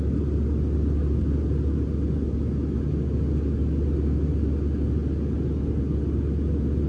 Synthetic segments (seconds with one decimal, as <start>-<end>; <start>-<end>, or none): none